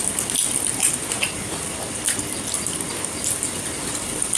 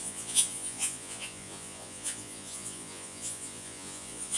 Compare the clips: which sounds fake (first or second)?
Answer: second